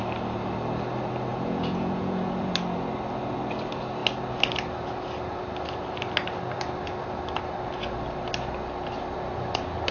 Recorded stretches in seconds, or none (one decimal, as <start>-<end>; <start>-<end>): 0.0-1.3; 2.5-9.9